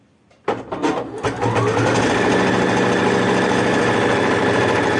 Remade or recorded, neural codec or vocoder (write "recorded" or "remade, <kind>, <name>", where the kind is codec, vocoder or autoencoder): recorded